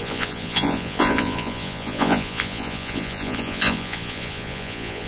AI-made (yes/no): yes